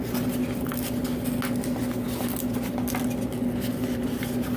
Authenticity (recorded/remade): recorded